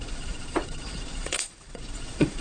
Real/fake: fake